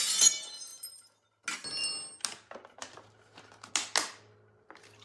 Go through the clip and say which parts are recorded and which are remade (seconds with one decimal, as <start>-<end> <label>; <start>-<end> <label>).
0.0-5.0 recorded